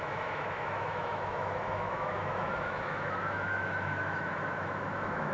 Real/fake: fake